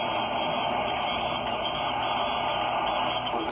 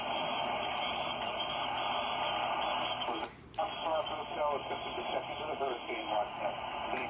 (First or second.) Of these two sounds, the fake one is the second